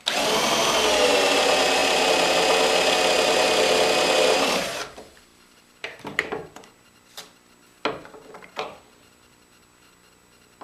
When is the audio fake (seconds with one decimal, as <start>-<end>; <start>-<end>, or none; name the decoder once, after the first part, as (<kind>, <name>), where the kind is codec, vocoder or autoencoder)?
1.8-2.6 (vocoder, BigVGAN v2); 5.3-7.5